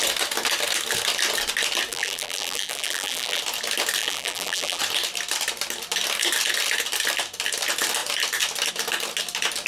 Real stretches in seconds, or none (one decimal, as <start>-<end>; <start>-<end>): 0.0-1.9; 3.4-4.0; 4.8-9.7